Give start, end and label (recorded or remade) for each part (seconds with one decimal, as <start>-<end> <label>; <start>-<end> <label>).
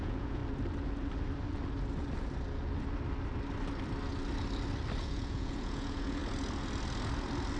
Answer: 0.0-0.4 remade; 0.4-5.0 recorded; 5.0-6.2 remade; 6.2-7.6 recorded